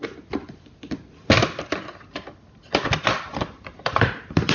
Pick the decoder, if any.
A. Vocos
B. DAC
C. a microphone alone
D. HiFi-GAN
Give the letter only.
C